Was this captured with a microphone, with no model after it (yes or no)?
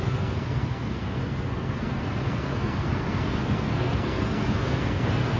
no